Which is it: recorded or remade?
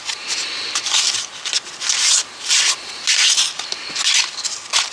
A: recorded